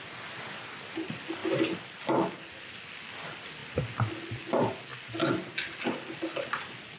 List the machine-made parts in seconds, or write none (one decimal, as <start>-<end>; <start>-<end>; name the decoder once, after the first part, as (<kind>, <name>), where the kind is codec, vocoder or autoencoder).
none